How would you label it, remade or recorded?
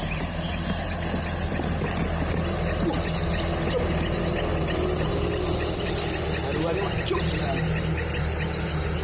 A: recorded